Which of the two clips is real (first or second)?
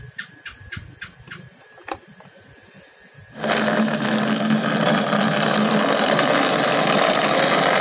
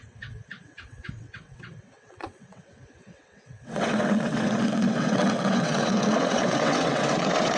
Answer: first